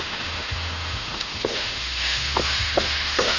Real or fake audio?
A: fake